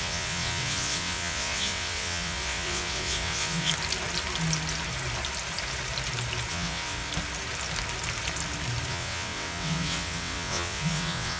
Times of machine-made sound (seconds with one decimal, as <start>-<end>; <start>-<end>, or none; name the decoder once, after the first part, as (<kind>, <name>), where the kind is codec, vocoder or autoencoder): 0.0-3.7 (vocoder, WaveNeXt); 6.5-7.1; 8.9-11.4